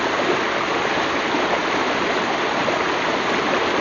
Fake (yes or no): no